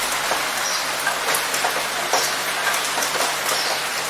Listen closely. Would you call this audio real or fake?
real